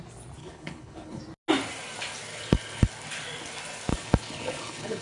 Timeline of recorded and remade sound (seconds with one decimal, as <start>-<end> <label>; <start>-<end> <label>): 0.0-0.4 recorded; 0.4-1.2 remade; 1.2-2.3 recorded; 2.3-2.9 remade; 2.9-3.9 recorded; 3.9-5.0 remade